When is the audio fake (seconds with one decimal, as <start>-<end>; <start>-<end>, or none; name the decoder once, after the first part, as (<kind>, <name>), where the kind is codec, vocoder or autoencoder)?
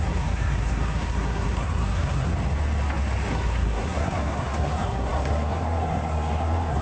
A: 0.0-2.3 (codec, SNAC); 3.3-6.8